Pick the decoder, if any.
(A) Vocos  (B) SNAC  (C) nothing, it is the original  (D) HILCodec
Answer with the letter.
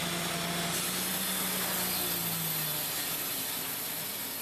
C